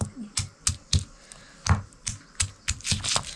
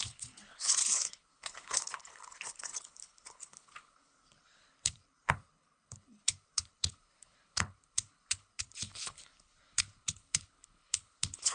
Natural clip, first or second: first